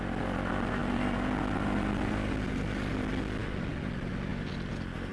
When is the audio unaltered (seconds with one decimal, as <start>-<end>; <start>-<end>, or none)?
0.0-5.1